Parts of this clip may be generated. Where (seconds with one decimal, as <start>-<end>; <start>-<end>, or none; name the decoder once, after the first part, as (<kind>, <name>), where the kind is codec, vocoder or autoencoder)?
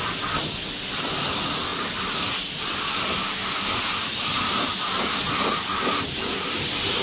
none